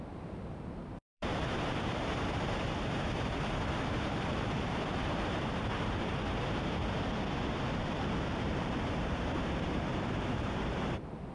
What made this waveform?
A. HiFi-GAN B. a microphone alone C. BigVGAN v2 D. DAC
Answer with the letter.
C